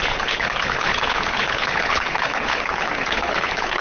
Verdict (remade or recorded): remade